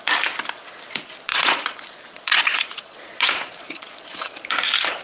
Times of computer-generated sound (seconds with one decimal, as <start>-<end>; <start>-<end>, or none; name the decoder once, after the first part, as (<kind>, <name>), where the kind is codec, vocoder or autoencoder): 1.3-4.3 (vocoder, Vocos)